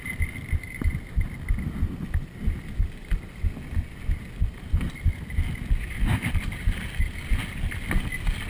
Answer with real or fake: real